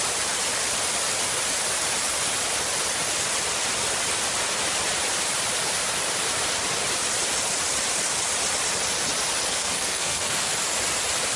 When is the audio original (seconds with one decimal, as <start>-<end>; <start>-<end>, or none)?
0.0-9.5; 10.5-11.4